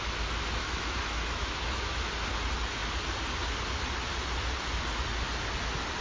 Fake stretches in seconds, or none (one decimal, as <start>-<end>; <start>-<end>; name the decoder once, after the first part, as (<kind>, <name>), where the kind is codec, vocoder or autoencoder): 0.6-2.1 (autoencoder, DAC-VAE)